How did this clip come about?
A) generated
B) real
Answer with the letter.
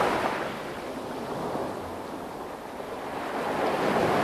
B